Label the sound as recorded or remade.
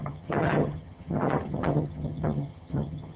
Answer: remade